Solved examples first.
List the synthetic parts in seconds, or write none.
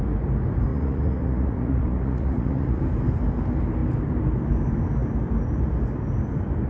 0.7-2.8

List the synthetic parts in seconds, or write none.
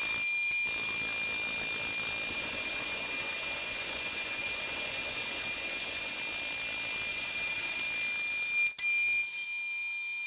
2.3-6.2; 7.1-7.8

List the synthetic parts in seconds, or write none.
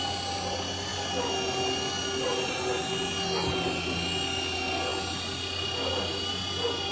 none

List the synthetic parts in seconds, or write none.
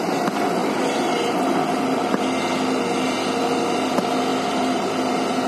none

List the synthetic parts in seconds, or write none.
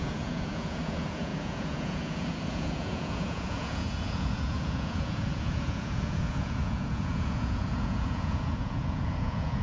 0.0-9.6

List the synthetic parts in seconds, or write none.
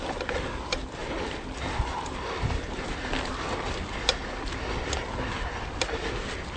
none